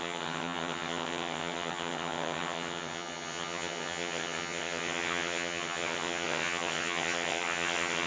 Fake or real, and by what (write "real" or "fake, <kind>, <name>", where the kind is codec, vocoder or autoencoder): fake, vocoder, HiFi-GAN